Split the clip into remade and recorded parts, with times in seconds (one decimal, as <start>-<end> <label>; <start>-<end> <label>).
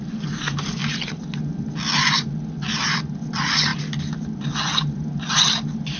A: 0.0-6.0 recorded